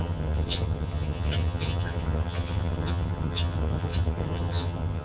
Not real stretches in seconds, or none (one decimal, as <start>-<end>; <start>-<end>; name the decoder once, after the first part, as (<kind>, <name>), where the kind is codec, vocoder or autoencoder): 0.0-5.0 (vocoder, HiFi-GAN)